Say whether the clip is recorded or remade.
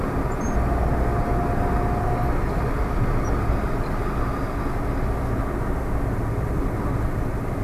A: recorded